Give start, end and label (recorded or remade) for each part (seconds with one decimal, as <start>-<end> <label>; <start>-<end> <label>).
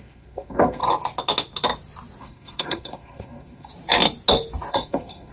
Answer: 0.0-0.8 remade; 0.8-2.2 recorded; 2.2-3.7 remade; 3.7-4.7 recorded; 4.7-5.3 remade